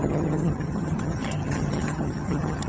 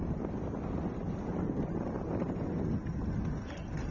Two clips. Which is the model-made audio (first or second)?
first